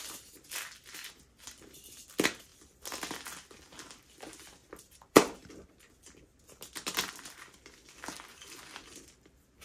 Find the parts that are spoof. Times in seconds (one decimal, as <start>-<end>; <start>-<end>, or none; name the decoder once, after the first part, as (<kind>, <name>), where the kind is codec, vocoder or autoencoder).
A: 4.6-5.5 (vocoder, BigVGAN v2)